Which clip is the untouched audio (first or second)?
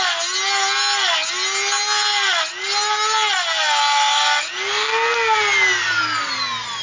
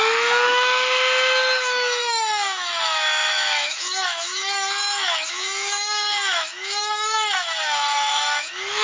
first